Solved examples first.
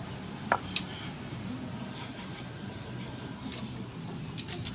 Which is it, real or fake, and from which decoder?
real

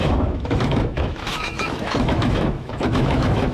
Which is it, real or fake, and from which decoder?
fake, autoencoder, DAC-VAE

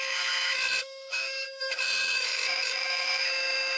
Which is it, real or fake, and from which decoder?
fake, autoencoder, DAC-VAE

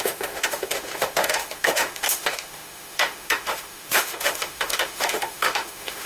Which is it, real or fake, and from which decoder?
fake, autoencoder, DAC-VAE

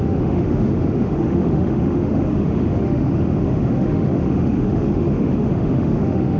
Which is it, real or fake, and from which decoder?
fake, autoencoder, DAC-VAE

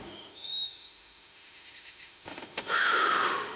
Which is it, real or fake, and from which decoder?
fake, autoencoder, DAC-VAE